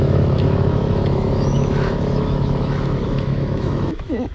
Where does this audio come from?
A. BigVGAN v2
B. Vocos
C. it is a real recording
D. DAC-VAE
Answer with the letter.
D